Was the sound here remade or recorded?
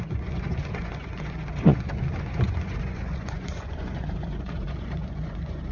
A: remade